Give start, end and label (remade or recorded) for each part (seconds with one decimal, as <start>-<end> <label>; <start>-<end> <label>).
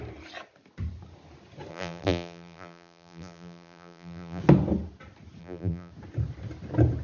0.0-1.7 recorded; 1.7-4.4 remade; 4.4-5.4 recorded; 5.4-5.9 remade; 5.9-7.0 recorded